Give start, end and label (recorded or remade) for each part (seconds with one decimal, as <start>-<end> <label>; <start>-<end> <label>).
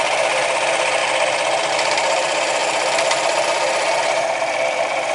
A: 0.0-1.0 remade; 1.0-1.7 recorded; 1.7-5.1 remade